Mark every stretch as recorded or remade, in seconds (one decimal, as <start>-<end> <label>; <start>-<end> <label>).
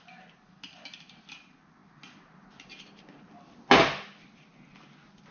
0.0-5.3 recorded